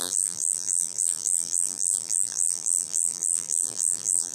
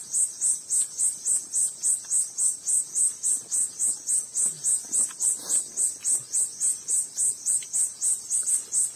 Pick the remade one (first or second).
first